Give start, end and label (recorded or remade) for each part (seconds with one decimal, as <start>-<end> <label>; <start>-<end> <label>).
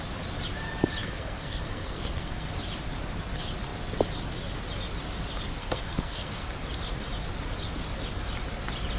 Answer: 0.0-1.0 recorded; 1.0-2.5 remade; 2.5-5.6 recorded; 5.6-6.5 remade; 6.5-9.0 recorded